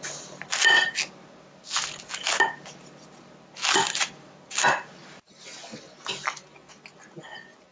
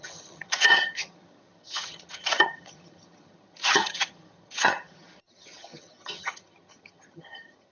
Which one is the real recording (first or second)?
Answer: first